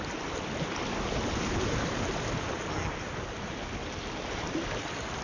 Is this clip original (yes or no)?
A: yes